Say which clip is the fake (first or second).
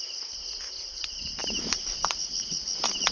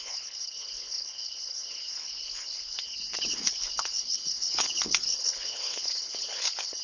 second